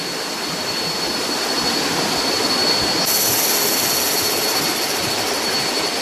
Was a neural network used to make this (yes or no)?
no